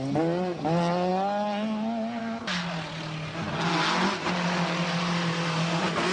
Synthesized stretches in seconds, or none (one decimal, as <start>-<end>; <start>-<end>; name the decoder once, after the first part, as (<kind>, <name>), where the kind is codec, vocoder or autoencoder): none